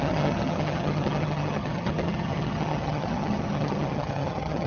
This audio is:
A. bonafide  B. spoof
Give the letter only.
B